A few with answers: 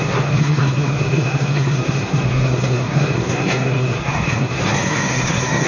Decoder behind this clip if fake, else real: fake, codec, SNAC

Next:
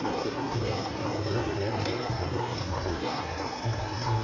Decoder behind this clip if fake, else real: fake, codec, SNAC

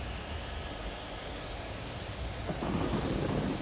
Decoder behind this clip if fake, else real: real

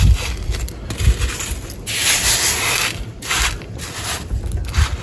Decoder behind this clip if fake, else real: real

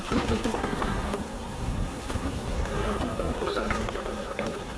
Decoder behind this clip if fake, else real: fake, codec, SNAC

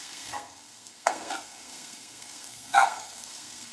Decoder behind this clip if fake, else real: fake, codec, SNAC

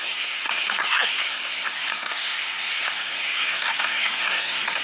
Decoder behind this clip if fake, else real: fake, codec, SNAC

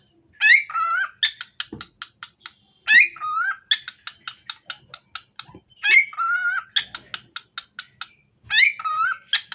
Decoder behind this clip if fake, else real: real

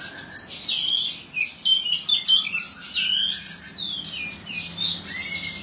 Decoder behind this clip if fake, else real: real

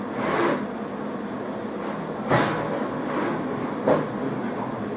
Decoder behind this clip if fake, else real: real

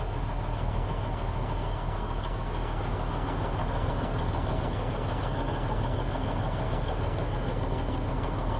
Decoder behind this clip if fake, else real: fake, codec, SNAC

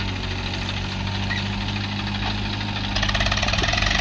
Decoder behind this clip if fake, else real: real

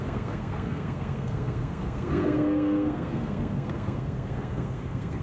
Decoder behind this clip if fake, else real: fake, codec, SNAC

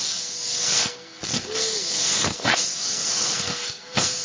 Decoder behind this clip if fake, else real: fake, codec, SNAC